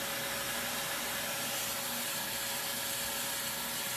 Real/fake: real